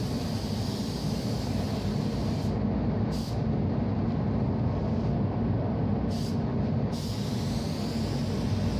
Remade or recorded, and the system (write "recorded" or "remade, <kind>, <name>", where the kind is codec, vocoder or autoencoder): recorded